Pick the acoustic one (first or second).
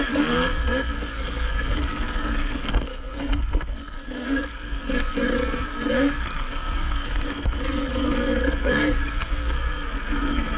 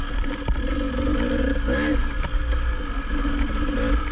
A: second